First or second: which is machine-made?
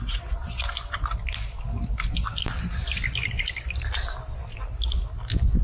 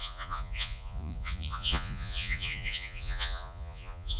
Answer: second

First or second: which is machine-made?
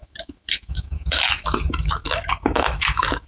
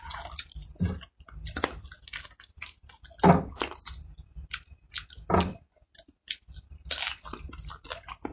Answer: first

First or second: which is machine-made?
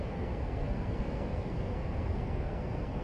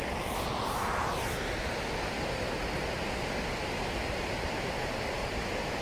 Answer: first